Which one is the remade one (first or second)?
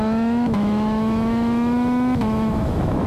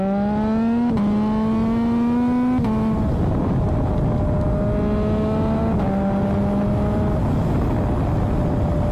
first